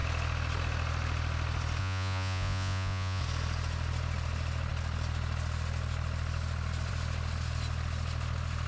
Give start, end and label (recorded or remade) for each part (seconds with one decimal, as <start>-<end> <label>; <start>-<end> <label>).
0.0-1.8 recorded; 1.8-3.2 remade; 3.2-8.7 recorded